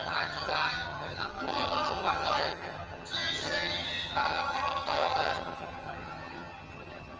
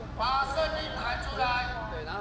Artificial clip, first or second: first